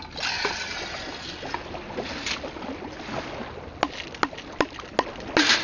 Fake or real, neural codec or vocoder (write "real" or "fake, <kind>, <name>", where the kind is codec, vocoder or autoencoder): real